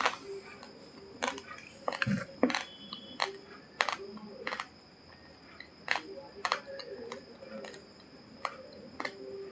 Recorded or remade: recorded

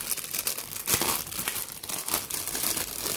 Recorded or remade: recorded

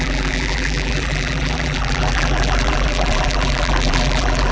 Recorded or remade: remade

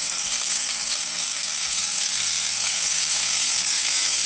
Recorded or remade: remade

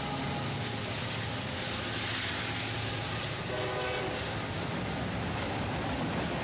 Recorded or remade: recorded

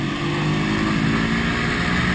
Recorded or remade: recorded